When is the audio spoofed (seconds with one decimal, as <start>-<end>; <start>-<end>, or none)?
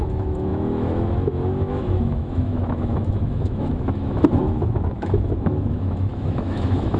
0.0-7.0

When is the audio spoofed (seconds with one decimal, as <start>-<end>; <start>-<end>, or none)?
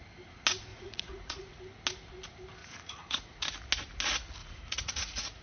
0.7-1.6; 2.6-3.4; 4.4-5.4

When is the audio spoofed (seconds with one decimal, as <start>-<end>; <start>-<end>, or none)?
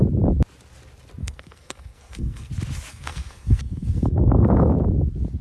1.2-2.5; 2.9-4.7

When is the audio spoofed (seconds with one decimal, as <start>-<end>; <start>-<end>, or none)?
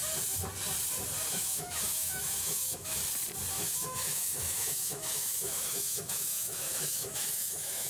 1.3-3.0; 3.5-7.9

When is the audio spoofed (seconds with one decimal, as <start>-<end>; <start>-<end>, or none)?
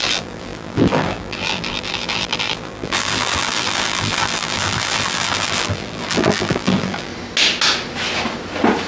0.0-7.1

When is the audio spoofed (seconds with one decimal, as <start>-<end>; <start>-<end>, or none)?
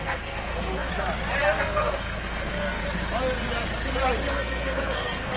0.0-0.9; 1.4-2.8; 4.3-5.4